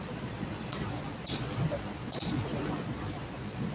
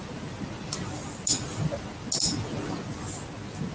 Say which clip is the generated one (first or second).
first